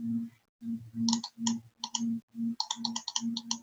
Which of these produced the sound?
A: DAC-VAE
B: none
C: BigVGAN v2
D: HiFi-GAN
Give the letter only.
B